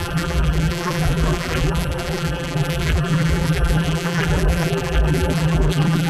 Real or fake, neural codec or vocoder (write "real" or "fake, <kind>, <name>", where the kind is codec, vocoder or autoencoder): fake, vocoder, BigVGAN v2